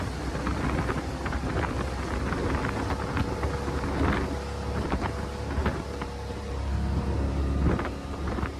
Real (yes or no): yes